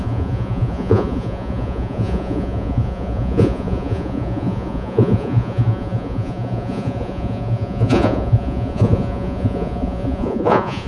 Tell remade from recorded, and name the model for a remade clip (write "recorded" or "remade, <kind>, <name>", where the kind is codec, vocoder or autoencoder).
remade, vocoder, Vocos